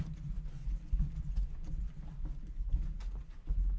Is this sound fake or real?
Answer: real